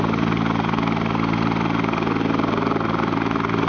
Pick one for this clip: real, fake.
real